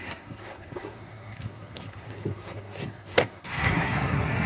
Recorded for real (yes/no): no